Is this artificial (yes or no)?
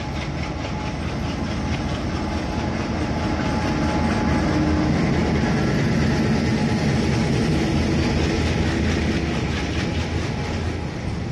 no